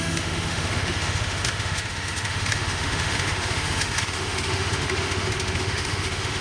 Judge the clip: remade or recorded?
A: remade